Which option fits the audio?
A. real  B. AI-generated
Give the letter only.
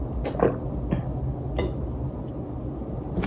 A